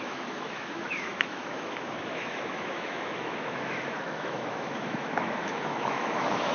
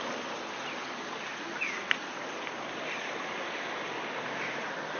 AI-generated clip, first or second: first